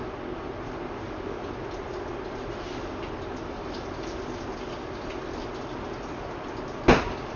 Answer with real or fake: real